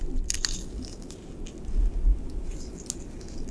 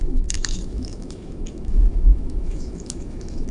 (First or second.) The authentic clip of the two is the first